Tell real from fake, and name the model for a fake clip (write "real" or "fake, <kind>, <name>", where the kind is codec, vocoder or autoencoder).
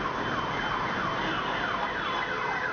real